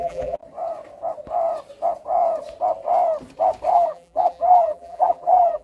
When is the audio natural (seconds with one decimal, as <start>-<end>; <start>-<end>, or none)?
0.4-3.7